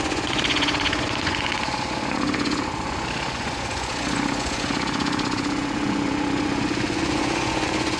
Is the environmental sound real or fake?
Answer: fake